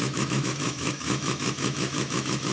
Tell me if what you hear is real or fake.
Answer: fake